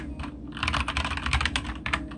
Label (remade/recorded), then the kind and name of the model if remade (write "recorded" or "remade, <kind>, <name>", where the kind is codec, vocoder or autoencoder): recorded